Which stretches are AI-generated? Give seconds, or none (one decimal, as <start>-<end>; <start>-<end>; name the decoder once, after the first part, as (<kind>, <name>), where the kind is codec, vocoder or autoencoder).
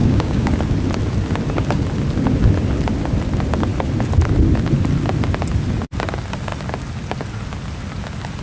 0.0-0.5 (codec, DAC)